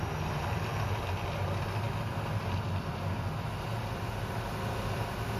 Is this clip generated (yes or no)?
no